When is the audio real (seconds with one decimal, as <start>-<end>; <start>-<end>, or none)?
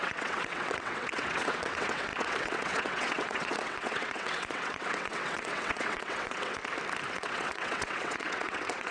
6.6-7.1